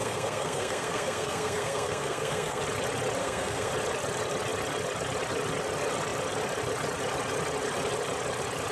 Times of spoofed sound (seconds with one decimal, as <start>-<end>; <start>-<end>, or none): 0.0-2.6; 3.2-3.7